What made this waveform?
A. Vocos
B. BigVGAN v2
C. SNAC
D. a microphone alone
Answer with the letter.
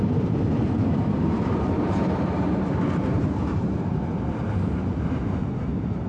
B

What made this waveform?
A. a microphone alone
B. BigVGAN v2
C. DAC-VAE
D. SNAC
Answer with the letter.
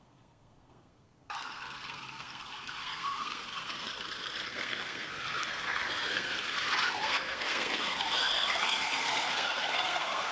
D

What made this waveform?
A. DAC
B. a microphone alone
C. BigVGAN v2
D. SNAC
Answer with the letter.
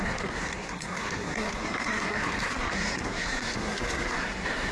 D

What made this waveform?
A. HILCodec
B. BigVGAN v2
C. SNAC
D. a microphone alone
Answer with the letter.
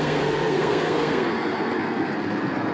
C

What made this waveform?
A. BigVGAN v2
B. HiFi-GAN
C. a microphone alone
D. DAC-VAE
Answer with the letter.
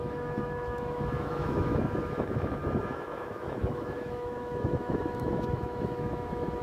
D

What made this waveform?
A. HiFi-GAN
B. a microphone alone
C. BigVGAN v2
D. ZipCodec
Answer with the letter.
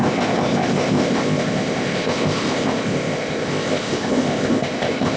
D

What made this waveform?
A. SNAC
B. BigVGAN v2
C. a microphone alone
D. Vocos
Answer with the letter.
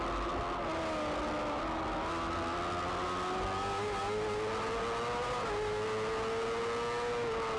C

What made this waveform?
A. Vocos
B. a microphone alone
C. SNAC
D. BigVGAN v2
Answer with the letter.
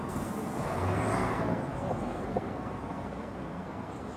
C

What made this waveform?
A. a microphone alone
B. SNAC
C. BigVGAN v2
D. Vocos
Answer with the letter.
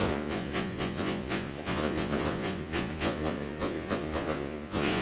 D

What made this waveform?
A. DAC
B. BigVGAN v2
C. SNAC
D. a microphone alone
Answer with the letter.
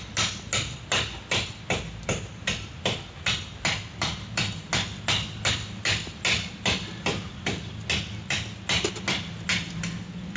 D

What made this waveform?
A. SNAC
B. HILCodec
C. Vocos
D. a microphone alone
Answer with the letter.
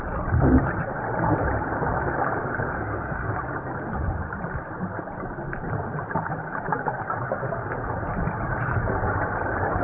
D